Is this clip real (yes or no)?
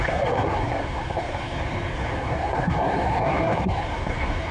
no